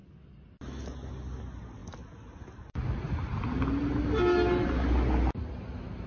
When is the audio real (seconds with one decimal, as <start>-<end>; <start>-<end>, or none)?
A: 0.0-6.1

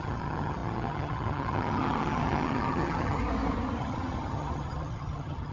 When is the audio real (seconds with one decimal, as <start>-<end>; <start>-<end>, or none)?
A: 3.2-3.8

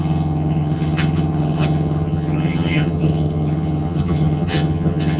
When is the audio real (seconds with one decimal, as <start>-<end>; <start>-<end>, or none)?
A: none

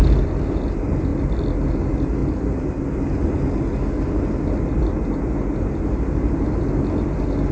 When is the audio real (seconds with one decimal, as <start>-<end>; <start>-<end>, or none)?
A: 0.0-7.5

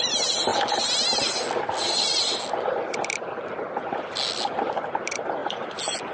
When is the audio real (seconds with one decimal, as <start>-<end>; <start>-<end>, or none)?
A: 0.0-6.1